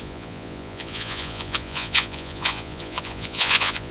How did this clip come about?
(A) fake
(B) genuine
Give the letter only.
A